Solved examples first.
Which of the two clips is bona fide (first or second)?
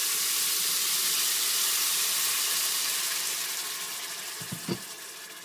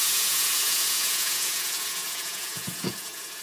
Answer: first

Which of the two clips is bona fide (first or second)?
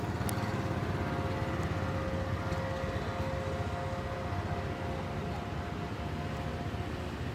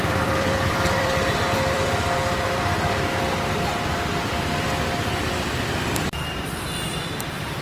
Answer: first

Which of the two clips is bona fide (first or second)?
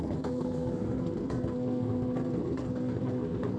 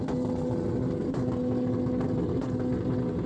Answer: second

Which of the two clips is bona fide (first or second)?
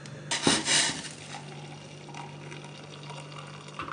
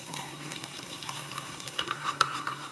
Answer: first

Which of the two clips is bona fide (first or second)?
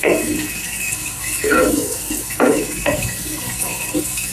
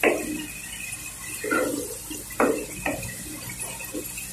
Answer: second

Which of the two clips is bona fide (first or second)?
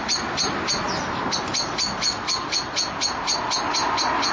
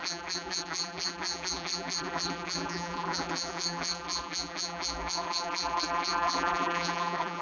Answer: first